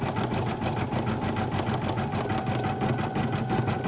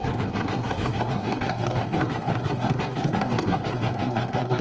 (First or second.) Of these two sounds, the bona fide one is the first